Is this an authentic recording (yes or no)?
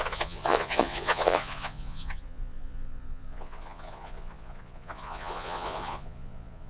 no